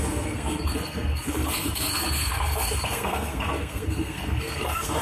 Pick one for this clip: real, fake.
fake